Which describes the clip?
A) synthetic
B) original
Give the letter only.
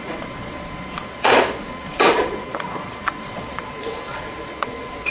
A